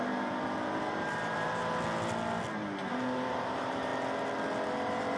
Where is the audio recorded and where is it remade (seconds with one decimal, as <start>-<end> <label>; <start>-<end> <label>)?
0.0-1.6 remade; 1.6-3.3 recorded; 3.3-3.9 remade; 3.9-5.2 recorded